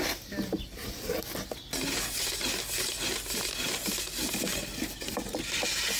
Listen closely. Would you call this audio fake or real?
real